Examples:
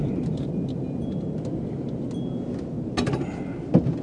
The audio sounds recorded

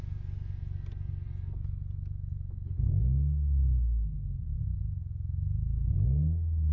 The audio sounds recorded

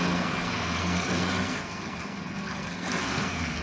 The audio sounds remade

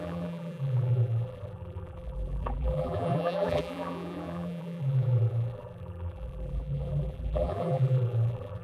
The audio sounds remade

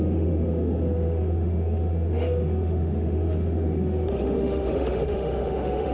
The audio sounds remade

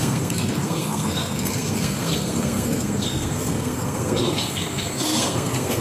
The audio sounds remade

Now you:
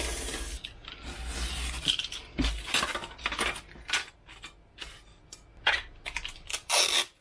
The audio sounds recorded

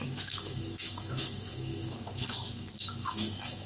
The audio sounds remade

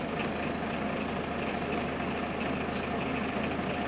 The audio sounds recorded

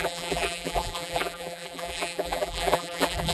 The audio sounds remade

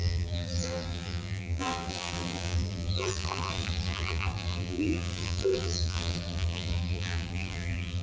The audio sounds remade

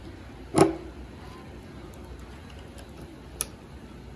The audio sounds recorded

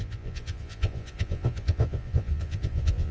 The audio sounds remade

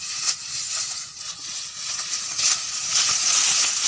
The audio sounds remade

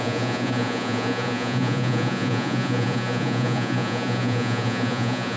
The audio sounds remade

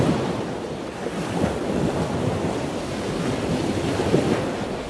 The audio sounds recorded